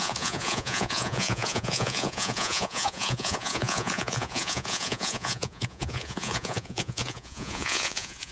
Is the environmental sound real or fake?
fake